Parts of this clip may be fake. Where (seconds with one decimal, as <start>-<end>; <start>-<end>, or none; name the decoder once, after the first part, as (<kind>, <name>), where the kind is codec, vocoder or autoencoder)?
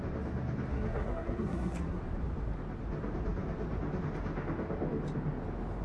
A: 0.7-2.0 (codec, SNAC)